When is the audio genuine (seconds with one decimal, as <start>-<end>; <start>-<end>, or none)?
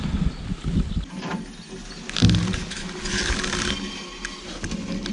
1.3-4.4